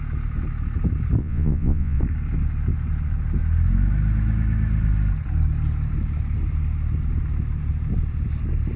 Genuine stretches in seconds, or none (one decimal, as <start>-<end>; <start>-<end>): 0.0-1.2; 2.0-8.8